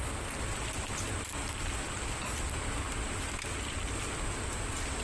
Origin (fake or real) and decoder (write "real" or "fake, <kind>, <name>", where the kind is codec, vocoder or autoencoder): real